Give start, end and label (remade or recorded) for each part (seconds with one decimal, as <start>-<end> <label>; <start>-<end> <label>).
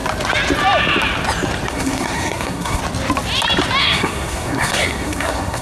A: 0.0-1.7 recorded; 1.7-2.8 remade; 2.8-3.8 recorded; 3.8-5.6 remade